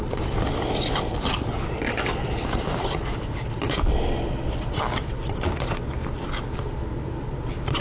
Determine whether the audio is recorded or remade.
recorded